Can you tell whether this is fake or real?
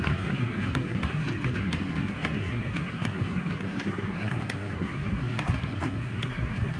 fake